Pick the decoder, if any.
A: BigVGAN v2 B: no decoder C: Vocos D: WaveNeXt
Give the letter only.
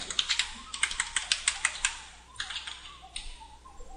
B